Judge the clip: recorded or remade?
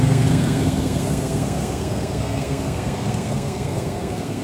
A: remade